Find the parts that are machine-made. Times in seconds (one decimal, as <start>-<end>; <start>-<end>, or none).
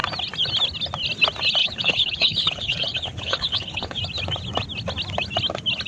1.6-4.0